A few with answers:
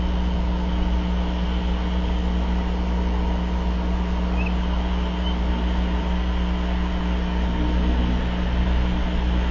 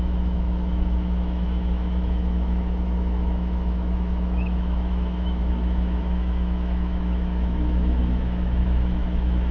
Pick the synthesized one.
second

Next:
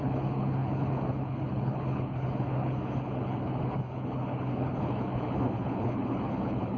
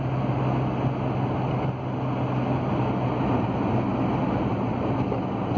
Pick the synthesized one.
first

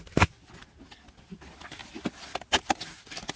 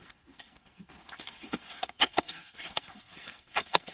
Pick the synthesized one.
second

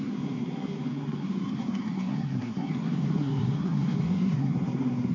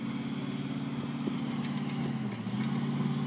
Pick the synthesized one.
first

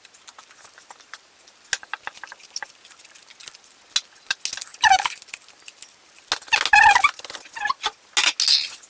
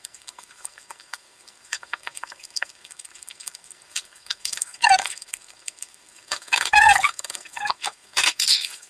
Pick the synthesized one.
second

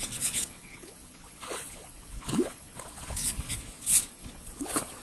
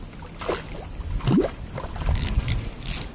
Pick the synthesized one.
first